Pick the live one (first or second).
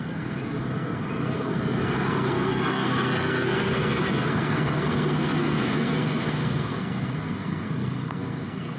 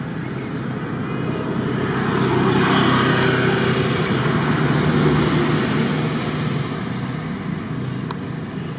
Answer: second